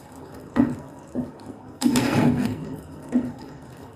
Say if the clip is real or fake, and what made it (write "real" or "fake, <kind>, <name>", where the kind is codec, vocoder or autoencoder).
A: fake, codec, SNAC